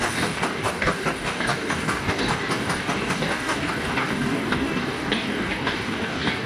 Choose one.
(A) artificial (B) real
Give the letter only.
A